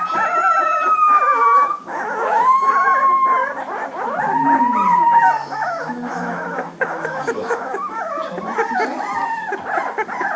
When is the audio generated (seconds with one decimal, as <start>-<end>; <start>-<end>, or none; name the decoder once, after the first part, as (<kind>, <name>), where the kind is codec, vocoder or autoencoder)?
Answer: 1.4-2.7 (autoencoder, DAC-VAE); 5.4-8.0